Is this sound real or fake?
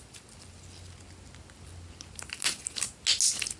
real